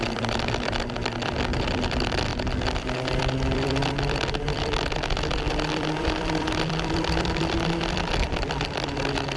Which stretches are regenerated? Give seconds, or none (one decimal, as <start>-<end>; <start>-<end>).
0.0-2.3; 3.2-9.4